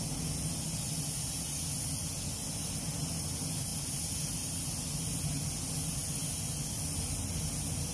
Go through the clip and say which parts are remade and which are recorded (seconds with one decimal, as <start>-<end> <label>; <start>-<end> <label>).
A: 0.0-7.9 recorded